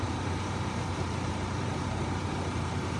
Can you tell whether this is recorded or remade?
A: remade